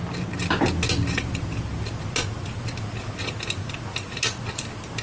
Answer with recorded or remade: recorded